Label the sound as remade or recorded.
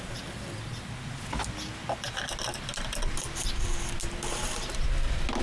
recorded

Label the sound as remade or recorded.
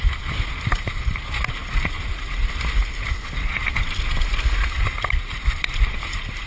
recorded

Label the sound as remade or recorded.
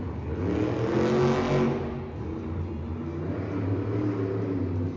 recorded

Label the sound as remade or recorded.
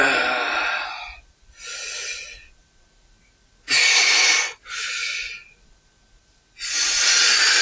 recorded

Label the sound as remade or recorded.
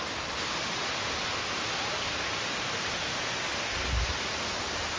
recorded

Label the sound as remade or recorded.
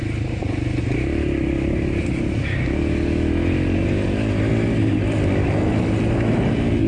recorded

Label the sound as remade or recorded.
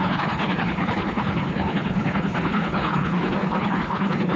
remade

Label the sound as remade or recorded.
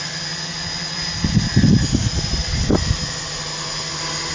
recorded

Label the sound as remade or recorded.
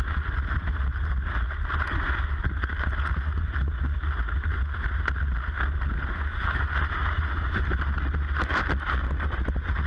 recorded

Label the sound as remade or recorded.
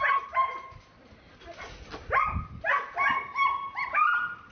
recorded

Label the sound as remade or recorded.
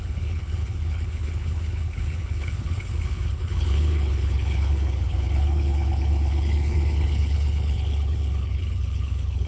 remade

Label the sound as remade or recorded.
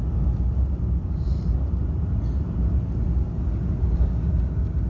recorded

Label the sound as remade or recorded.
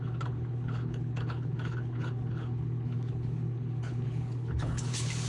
remade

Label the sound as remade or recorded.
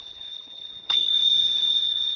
remade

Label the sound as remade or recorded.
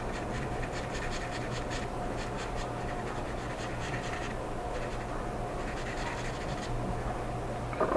recorded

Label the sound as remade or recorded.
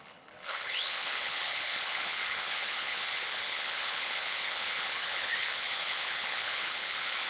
remade